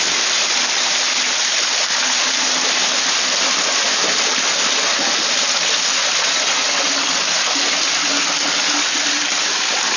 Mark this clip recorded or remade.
recorded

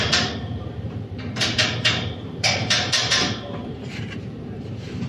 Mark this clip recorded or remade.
remade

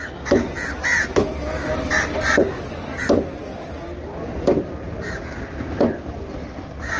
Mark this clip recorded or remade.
recorded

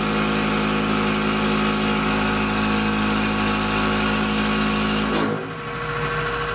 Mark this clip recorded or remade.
recorded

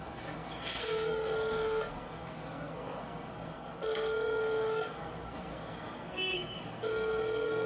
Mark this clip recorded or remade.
remade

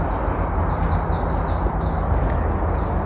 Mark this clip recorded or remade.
recorded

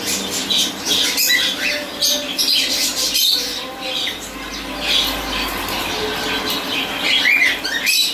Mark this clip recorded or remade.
recorded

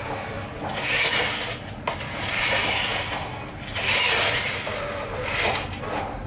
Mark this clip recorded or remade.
recorded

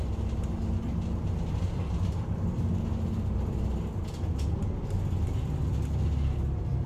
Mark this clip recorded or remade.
recorded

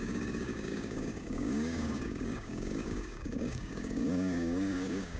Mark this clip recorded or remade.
remade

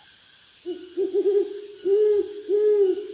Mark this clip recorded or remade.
recorded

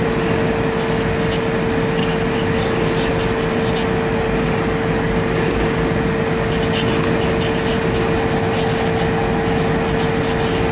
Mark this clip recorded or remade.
recorded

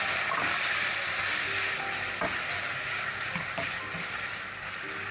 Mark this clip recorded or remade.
recorded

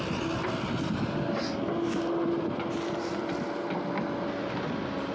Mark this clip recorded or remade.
recorded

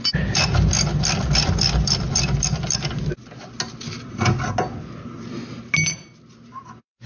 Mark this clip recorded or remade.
recorded